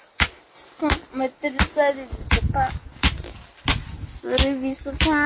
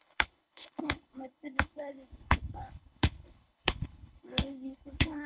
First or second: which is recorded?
first